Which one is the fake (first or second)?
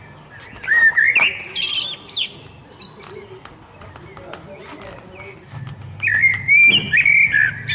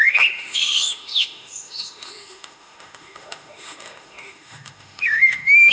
second